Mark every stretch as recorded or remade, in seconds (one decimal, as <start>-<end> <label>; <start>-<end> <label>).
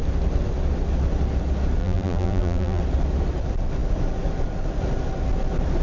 0.0-1.8 recorded; 1.8-2.8 remade; 2.8-5.8 recorded